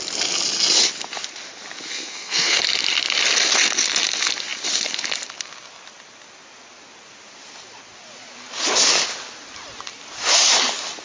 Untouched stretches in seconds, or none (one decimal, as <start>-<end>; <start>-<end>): 0.0-1.9; 2.6-11.0